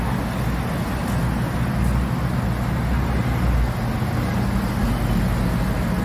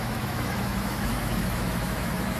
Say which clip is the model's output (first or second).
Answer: second